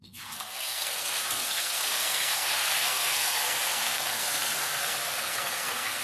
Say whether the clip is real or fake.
fake